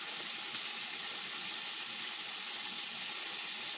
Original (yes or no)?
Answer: yes